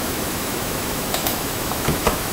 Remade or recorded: remade